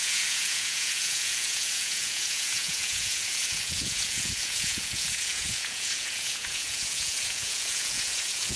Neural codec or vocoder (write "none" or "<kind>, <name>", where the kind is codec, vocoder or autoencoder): vocoder, Vocos